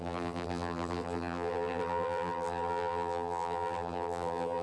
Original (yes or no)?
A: no